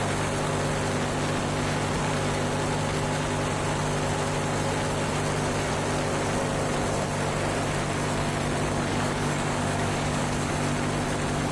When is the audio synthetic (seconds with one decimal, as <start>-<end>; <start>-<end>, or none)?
8.9-10.5